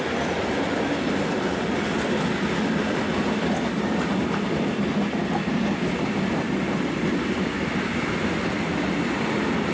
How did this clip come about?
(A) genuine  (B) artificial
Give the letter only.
A